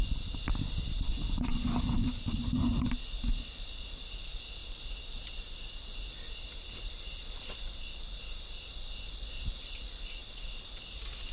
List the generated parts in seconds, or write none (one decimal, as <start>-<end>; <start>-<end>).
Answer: none